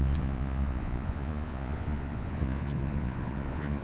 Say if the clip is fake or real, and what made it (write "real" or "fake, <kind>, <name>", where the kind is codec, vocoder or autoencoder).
fake, vocoder, Vocos